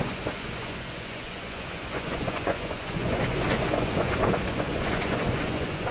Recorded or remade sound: remade